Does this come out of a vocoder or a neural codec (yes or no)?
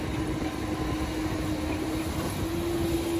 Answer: no